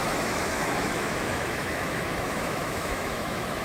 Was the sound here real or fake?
fake